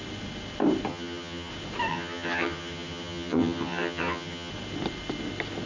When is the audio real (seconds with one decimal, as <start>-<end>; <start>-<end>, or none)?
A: 0.0-0.9; 1.5-1.9; 4.5-5.7